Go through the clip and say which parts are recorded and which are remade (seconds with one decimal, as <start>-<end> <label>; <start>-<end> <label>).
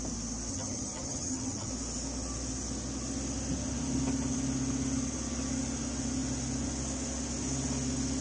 0.0-0.5 recorded; 0.5-1.7 remade; 1.7-8.2 recorded